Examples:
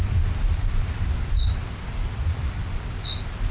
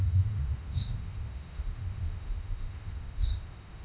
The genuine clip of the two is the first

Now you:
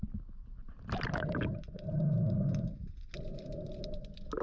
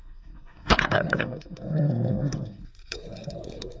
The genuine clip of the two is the first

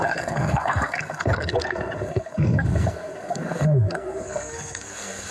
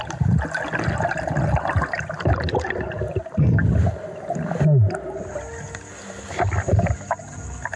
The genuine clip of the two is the second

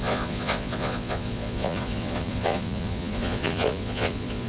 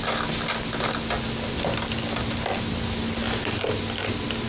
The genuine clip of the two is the second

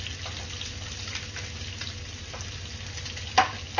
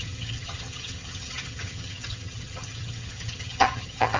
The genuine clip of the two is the first